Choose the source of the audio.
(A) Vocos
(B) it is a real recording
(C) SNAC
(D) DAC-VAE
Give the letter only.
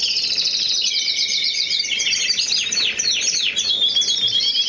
B